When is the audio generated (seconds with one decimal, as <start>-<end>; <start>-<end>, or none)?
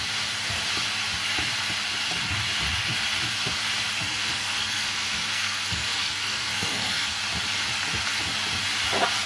4.1-7.2